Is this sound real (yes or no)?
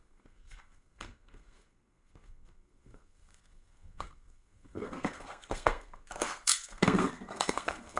no